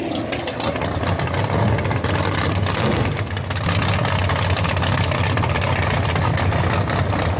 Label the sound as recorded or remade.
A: recorded